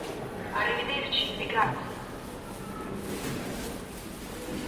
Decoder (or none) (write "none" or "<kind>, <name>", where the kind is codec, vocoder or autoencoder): none